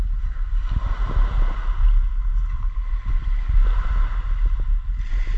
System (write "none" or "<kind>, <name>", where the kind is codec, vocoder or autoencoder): none